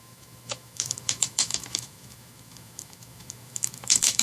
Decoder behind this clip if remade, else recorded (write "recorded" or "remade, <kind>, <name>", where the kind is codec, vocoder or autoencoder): remade, autoencoder, DAC-VAE